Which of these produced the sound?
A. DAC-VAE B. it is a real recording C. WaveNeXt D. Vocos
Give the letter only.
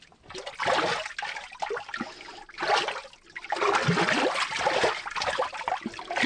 B